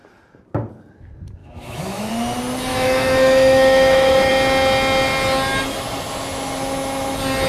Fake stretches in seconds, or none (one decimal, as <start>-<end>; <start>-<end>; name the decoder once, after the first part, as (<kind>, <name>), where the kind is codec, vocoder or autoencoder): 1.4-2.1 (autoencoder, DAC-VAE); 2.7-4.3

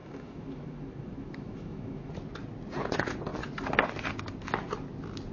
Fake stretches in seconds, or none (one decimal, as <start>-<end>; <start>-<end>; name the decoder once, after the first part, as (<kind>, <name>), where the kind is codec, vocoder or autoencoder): 0.0-2.1 (autoencoder, DAC-VAE)

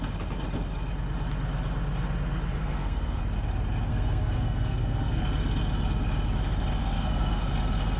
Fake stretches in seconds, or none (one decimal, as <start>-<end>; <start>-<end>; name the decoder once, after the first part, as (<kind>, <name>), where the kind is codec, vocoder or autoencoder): 2.6-3.2 (codec, SNAC); 3.9-5.2; 6.8-7.5

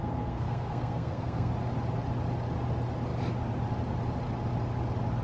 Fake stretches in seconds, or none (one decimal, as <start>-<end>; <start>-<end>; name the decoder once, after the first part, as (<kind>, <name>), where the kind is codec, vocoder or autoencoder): 0.0-1.5 (codec, SNAC)